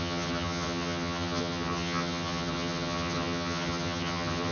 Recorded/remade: remade